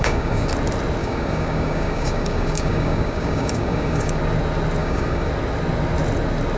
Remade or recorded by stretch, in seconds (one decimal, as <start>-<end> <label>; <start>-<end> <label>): 0.0-0.5 remade; 0.5-1.0 recorded; 1.0-4.2 remade; 4.2-4.8 recorded; 4.8-5.3 remade; 5.3-6.6 recorded